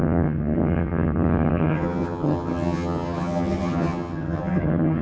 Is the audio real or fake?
fake